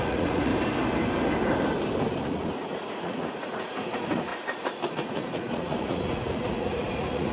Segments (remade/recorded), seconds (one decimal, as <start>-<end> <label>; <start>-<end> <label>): 0.0-0.5 remade; 0.5-2.2 recorded; 2.2-4.3 remade; 4.3-4.9 recorded; 4.9-7.3 remade